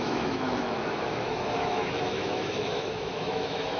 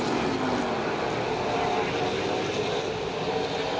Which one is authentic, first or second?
second